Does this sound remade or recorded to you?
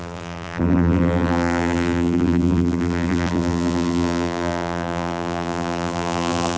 remade